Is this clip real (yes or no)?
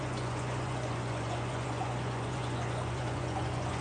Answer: no